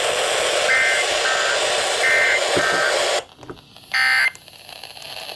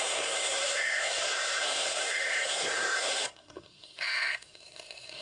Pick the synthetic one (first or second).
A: second